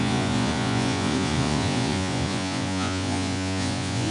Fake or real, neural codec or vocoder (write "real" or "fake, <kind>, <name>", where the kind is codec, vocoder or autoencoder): fake, vocoder, Vocos